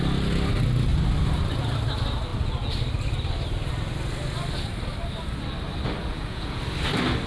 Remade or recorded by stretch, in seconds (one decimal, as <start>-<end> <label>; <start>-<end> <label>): 0.0-6.0 recorded; 6.0-6.6 remade; 6.6-7.3 recorded